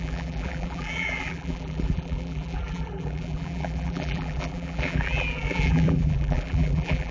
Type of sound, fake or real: fake